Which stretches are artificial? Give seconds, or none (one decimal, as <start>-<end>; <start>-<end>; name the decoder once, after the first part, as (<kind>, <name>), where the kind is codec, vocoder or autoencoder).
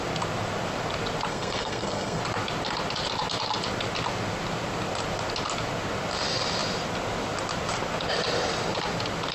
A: 1.3-2.2 (codec, SNAC)